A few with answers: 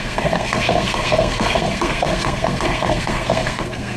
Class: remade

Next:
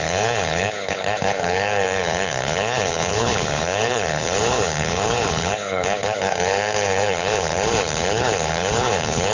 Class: remade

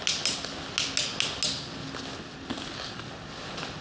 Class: recorded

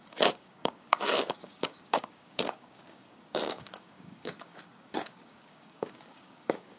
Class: remade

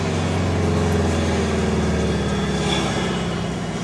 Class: recorded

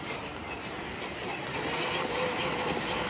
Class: recorded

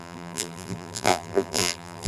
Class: remade